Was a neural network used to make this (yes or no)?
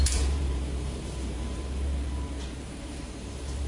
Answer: yes